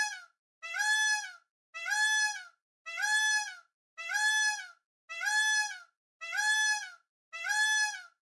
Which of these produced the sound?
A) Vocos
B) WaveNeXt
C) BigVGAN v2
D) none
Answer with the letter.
D